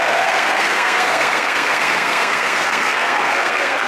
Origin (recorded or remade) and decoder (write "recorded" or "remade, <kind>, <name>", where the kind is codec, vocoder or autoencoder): remade, codec, SNAC